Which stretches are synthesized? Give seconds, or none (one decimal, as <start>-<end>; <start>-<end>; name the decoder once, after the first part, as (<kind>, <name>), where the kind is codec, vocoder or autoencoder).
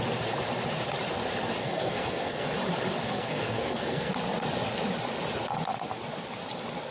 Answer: 1.6-2.5 (codec, SNAC); 3.0-4.1